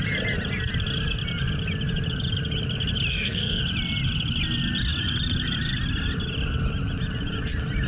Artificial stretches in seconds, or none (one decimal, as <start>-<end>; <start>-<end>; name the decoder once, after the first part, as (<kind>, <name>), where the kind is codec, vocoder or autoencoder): 3.1-3.6 (codec, SNAC)